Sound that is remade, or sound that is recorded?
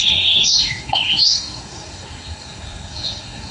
remade